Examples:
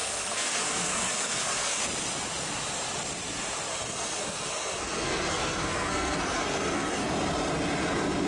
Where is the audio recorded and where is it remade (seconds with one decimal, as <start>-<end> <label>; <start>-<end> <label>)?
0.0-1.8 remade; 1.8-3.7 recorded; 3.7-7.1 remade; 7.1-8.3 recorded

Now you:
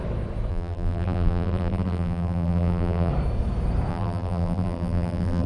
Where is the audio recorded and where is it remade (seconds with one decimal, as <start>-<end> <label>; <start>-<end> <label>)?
0.0-0.5 recorded; 0.5-3.1 remade; 3.1-3.9 recorded; 3.9-5.5 remade

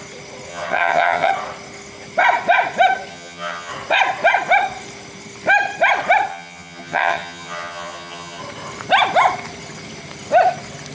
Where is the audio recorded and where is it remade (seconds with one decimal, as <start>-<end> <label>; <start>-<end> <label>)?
0.0-0.5 recorded; 0.5-1.3 remade; 1.3-3.1 recorded; 3.1-3.7 remade; 3.7-6.3 recorded; 6.3-8.4 remade; 8.4-10.9 recorded

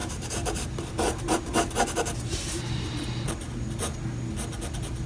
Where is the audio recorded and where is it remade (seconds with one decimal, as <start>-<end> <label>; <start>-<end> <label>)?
0.0-3.1 remade; 3.1-5.1 recorded